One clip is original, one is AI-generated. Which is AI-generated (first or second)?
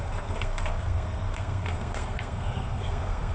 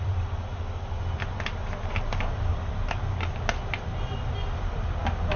first